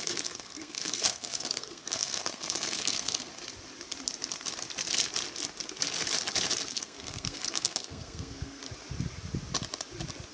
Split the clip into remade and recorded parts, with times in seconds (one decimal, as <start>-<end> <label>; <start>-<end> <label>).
0.0-3.3 remade; 3.3-6.7 recorded; 6.7-8.6 remade; 8.6-10.3 recorded